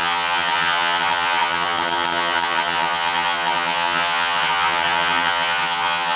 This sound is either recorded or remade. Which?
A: remade